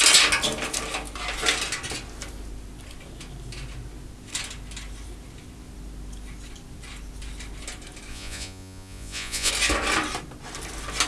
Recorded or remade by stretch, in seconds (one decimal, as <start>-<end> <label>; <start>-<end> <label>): 0.0-8.1 recorded; 8.1-9.5 remade; 9.5-11.1 recorded